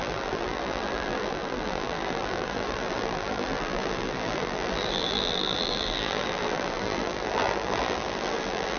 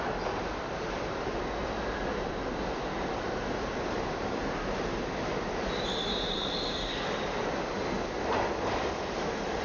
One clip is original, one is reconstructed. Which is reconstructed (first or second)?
first